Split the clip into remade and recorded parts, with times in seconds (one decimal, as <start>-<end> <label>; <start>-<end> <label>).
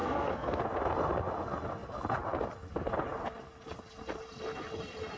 0.0-0.6 remade; 0.6-5.2 recorded